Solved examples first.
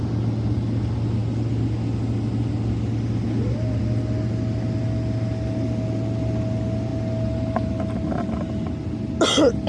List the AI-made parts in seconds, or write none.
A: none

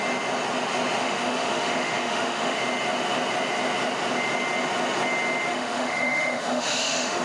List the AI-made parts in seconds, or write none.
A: 1.0-2.6 (autoencoder, DAC-VAE); 5.5-7.2